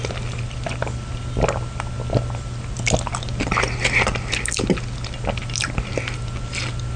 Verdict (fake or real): real